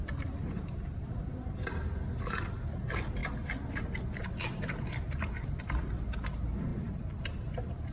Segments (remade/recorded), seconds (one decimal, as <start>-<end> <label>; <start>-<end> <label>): 0.0-1.4 remade; 1.4-7.9 recorded